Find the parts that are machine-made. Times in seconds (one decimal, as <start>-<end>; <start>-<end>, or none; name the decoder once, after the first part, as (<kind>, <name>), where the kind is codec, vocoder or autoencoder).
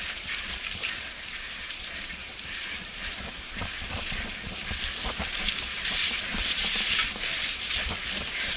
0.0-4.6 (vocoder, BigVGAN v2); 6.0-7.0; 8.2-8.6